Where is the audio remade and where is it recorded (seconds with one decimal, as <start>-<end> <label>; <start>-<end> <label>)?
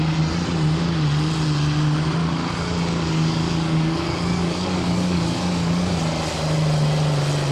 0.0-2.2 recorded; 2.2-5.9 remade; 5.9-7.5 recorded